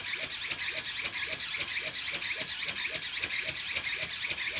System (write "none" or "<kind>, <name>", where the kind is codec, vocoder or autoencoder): none